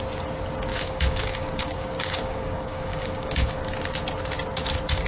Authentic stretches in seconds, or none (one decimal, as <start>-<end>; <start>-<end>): 0.0-0.7; 3.6-5.1